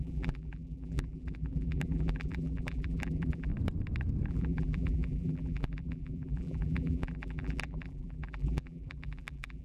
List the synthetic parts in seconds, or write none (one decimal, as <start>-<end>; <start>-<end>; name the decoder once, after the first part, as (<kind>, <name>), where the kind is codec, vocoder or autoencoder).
0.0-3.5 (vocoder, BigVGAN v2); 4.3-9.6